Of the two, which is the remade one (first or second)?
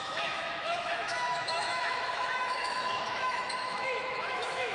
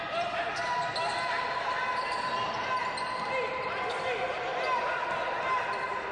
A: first